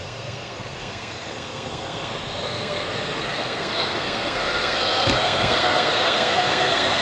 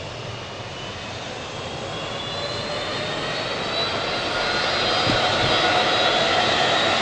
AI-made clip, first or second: first